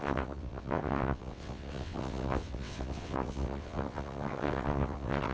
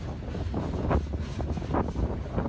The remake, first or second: first